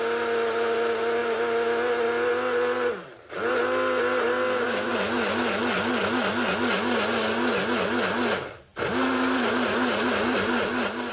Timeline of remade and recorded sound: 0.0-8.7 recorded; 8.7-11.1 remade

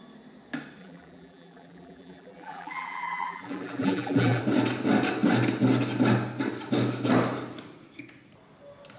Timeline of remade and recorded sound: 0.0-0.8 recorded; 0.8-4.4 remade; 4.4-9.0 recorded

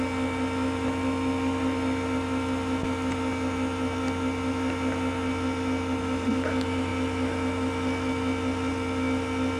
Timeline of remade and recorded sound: 0.0-9.6 recorded

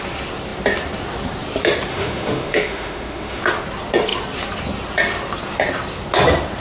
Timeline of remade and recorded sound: 0.0-1.9 recorded; 1.9-3.4 remade; 3.4-6.6 recorded

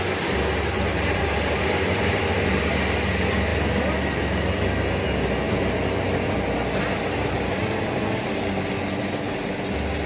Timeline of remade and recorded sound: 0.0-0.9 recorded; 0.9-2.3 remade; 2.3-10.1 recorded

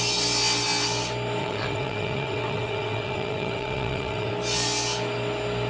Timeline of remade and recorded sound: 0.0-1.4 recorded; 1.4-4.3 remade; 4.3-5.7 recorded

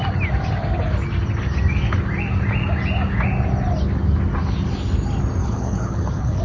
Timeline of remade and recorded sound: 0.0-5.4 recorded; 5.4-6.4 remade

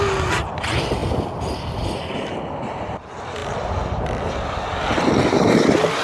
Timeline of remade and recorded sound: 0.0-6.0 recorded